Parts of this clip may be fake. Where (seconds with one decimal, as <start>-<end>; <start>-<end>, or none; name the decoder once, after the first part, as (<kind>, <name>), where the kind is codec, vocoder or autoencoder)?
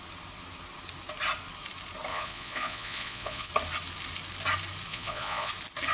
2.1-3.5 (vocoder, Vocos); 4.9-5.5